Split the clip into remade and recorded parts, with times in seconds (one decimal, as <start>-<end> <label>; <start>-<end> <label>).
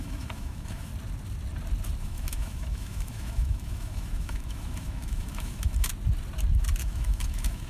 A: 0.0-0.9 remade; 0.9-2.0 recorded; 2.0-5.9 remade; 5.9-6.8 recorded; 6.8-7.7 remade